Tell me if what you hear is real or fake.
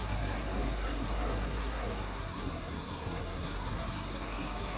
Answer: fake